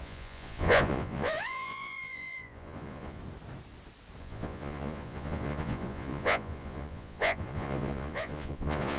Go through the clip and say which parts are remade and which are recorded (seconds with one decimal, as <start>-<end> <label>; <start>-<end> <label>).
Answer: 0.0-3.2 remade; 3.2-4.2 recorded; 4.2-9.0 remade